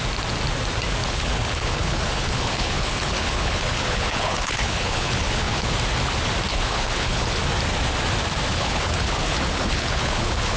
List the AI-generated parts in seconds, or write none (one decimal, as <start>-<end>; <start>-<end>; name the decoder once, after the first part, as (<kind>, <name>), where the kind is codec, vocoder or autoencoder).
1.0-5.7 (codec, HILCodec); 6.5-7.4; 8.5-10.6